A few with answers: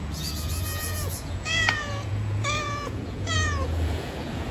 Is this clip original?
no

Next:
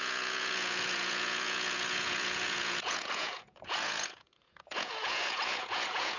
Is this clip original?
no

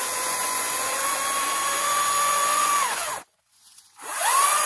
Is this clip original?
no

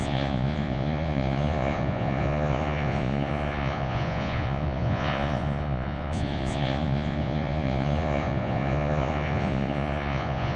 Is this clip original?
no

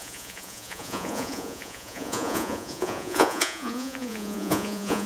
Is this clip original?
no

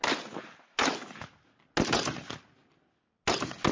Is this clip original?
yes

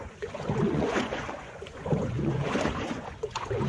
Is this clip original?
no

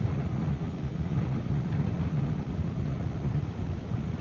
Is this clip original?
no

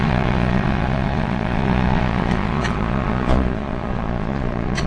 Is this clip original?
no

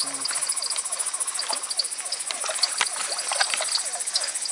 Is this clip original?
yes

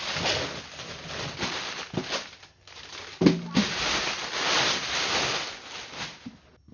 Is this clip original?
yes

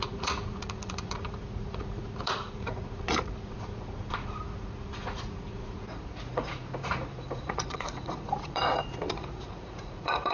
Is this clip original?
no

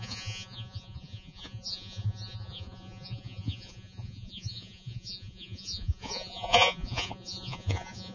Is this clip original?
no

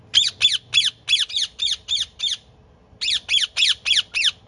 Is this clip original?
yes